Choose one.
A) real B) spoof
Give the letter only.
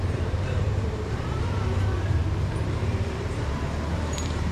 B